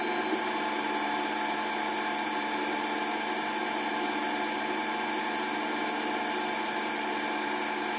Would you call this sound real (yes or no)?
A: yes